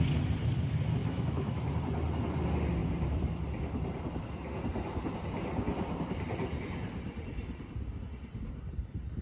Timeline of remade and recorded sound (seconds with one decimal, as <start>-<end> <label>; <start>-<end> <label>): 0.0-1.0 recorded; 1.0-1.7 remade; 1.7-9.2 recorded